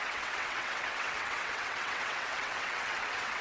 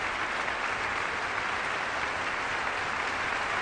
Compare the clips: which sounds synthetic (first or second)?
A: first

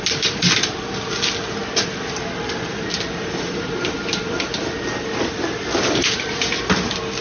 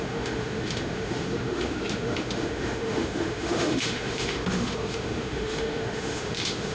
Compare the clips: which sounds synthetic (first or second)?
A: second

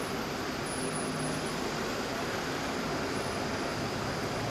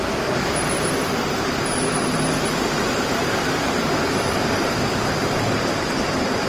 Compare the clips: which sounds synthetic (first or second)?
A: second